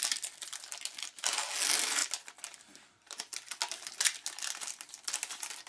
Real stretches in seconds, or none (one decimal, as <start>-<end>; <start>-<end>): 0.0-5.7